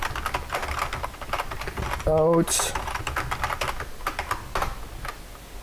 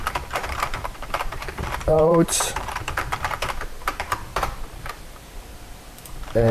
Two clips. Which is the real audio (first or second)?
first